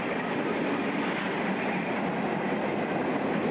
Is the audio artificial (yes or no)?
no